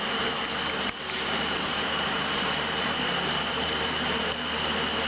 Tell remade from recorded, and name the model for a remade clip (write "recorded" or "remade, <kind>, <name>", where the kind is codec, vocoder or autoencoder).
remade, vocoder, BigVGAN v2